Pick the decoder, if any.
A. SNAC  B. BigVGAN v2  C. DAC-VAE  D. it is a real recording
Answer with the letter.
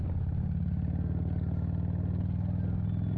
D